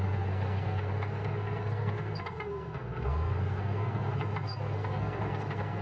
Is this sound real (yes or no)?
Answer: no